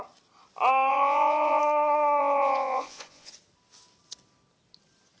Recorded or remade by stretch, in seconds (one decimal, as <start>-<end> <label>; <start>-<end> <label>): 0.0-0.9 recorded; 0.9-1.6 remade; 1.6-2.2 recorded; 2.2-3.3 remade; 3.3-5.2 recorded